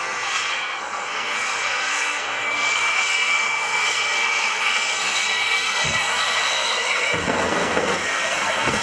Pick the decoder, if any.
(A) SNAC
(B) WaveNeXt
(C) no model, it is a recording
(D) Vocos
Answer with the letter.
A